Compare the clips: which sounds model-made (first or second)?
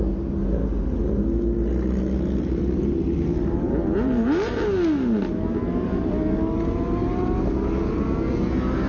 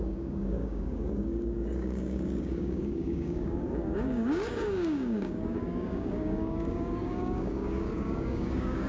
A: second